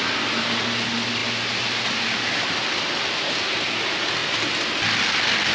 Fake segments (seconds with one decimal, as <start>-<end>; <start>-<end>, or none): none